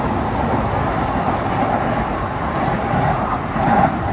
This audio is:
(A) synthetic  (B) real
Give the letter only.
B